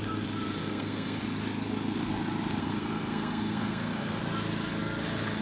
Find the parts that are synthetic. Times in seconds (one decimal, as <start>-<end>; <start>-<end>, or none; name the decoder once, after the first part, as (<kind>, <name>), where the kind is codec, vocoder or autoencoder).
0.6-1.2 (codec, SNAC); 2.6-4.2